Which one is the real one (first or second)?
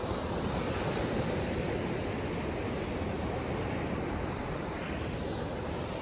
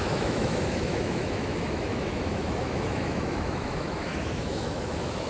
first